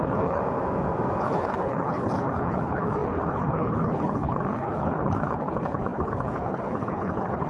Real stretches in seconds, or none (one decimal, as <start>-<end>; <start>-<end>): 0.4-1.2